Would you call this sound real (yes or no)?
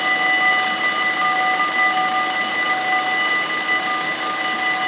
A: yes